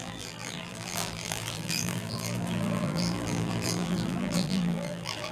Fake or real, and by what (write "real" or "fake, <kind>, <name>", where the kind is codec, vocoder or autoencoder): fake, vocoder, BigVGAN v2